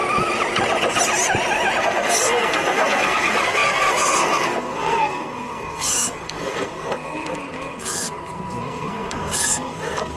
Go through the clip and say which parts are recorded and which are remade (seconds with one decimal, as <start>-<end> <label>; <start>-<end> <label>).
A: 0.0-1.8 recorded; 1.8-10.2 remade